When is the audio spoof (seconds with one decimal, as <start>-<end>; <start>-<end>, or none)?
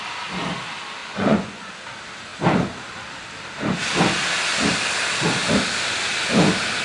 1.0-1.7